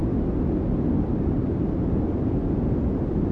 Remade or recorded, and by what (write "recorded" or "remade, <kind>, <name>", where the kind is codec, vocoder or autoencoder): recorded